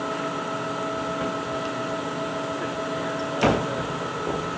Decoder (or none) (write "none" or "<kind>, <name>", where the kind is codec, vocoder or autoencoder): none